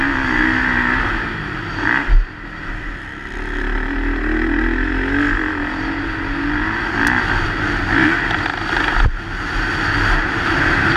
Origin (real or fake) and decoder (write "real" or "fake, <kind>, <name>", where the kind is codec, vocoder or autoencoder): real